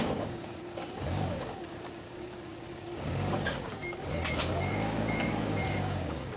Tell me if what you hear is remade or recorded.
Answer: remade